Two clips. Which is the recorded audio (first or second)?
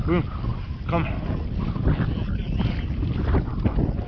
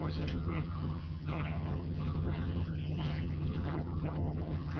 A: first